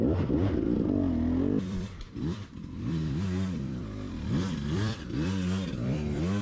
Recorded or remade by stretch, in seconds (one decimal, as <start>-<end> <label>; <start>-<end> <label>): 0.0-6.4 remade